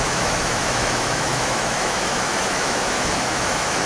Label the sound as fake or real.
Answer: fake